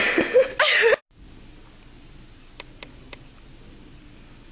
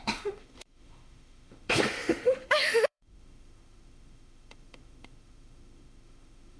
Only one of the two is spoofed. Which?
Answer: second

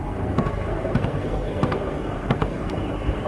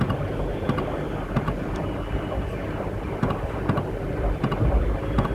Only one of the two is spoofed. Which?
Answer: first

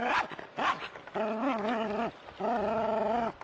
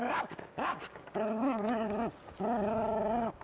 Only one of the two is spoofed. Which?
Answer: second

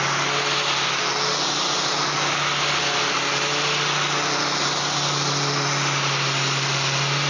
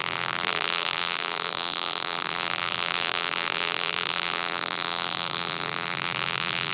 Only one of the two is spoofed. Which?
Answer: second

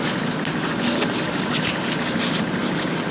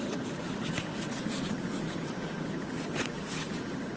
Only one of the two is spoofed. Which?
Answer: second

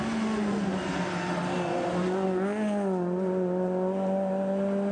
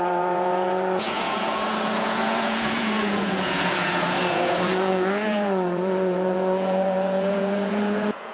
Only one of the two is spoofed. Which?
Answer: second